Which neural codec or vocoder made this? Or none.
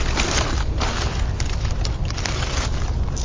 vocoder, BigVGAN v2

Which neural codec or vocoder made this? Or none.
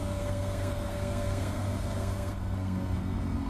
codec, SNAC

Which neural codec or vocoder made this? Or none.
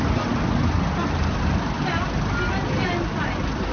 none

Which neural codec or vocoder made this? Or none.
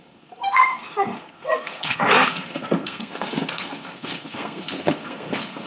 codec, SNAC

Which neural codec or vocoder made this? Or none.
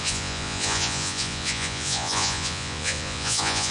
vocoder, Vocos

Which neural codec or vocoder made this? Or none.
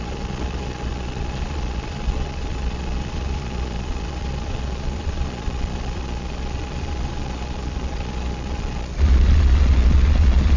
vocoder, Vocos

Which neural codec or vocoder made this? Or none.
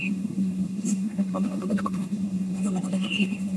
codec, SNAC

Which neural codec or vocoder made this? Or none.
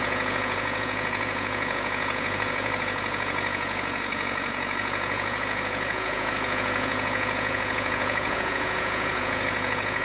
vocoder, Vocos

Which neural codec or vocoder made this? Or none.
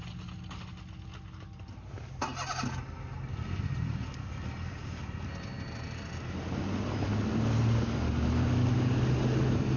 none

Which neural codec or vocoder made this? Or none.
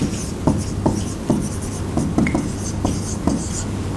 none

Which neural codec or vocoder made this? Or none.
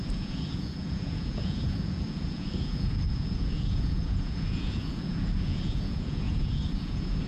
vocoder, Vocos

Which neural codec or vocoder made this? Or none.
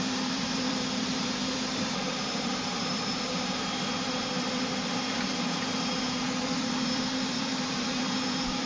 vocoder, BigVGAN v2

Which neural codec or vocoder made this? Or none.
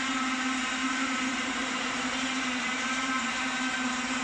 vocoder, BigVGAN v2